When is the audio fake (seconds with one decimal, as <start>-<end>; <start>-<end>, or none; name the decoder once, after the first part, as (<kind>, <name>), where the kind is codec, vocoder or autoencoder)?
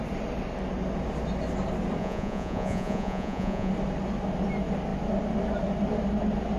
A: 2.0-3.7 (vocoder, Vocos)